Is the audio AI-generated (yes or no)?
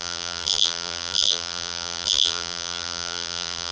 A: yes